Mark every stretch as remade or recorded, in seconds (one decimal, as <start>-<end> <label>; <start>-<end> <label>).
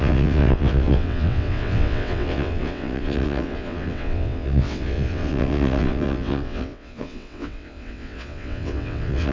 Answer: 0.0-9.3 remade